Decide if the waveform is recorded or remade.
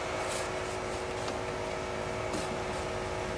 recorded